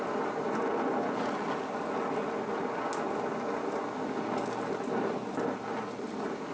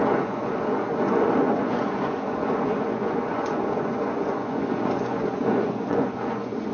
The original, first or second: first